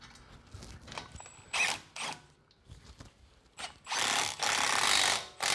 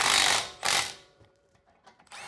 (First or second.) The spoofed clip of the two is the second